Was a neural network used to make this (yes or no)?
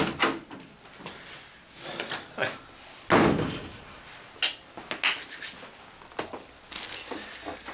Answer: no